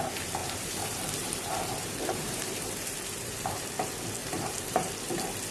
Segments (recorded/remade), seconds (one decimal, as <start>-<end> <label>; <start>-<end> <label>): 0.0-0.4 recorded; 0.4-3.7 remade; 3.7-4.2 recorded; 4.2-4.9 remade; 4.9-5.5 recorded